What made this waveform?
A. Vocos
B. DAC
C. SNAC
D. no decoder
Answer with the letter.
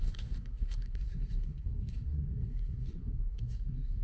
C